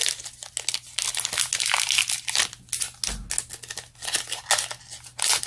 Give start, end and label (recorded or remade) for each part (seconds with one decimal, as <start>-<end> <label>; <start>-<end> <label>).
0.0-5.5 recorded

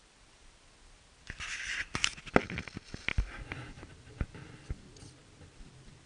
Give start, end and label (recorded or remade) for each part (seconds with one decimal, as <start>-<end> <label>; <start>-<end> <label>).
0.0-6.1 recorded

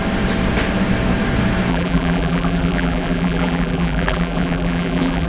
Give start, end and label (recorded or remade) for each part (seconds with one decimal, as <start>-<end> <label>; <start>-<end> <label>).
0.0-1.7 recorded; 1.7-5.3 remade

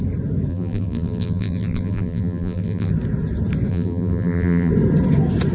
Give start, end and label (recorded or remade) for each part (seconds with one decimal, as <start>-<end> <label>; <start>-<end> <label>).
0.0-0.5 recorded; 0.5-2.9 remade; 2.9-3.7 recorded; 3.7-4.7 remade; 4.7-5.5 recorded

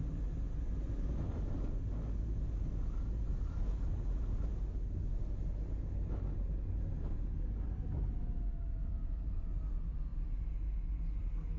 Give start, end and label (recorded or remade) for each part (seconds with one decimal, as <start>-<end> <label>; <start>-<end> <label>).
0.0-11.6 recorded